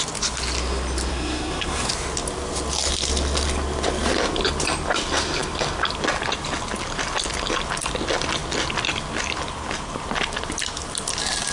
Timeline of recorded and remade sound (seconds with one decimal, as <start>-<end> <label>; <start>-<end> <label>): 0.0-1.1 recorded; 1.1-1.9 remade; 1.9-11.5 recorded